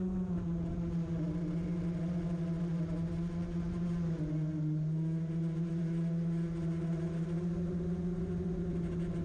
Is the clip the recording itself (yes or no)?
yes